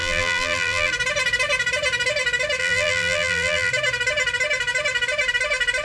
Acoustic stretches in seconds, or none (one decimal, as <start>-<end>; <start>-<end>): 0.9-2.6; 3.7-5.8